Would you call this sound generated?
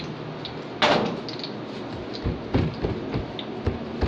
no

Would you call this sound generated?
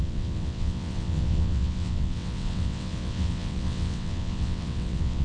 yes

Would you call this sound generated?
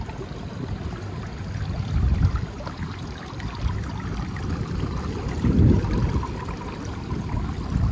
no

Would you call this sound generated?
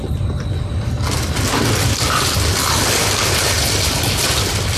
no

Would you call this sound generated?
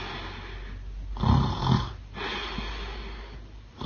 no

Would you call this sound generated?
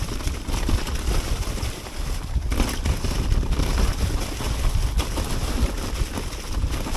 no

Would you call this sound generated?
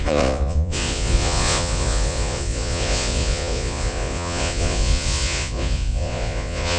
yes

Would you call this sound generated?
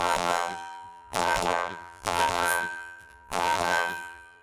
yes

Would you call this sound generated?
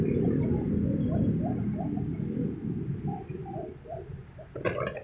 no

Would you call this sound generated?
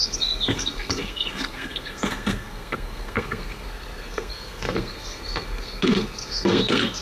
yes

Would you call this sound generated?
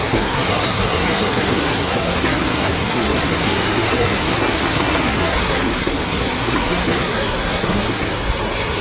yes